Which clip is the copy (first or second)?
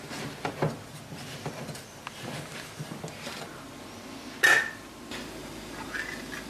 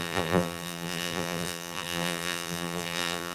second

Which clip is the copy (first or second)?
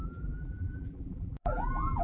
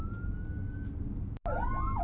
first